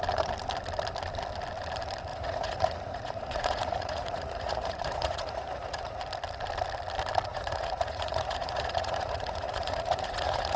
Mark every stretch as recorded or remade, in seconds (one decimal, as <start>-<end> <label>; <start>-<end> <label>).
0.0-2.1 recorded; 2.1-6.0 remade; 6.0-7.3 recorded; 7.3-10.6 remade